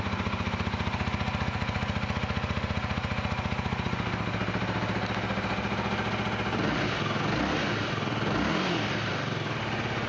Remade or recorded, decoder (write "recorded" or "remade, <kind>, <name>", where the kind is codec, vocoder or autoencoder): recorded